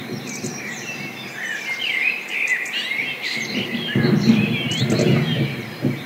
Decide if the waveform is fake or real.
real